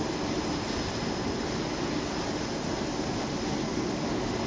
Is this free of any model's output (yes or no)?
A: yes